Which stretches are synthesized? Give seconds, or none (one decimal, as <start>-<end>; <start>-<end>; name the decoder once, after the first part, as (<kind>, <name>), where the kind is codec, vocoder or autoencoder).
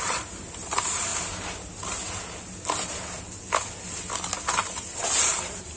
0.0-1.1 (vocoder, BigVGAN v2); 4.5-5.8